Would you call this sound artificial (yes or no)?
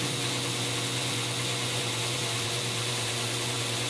yes